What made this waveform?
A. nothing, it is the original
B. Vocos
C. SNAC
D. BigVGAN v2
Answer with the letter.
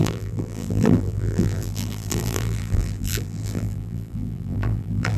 D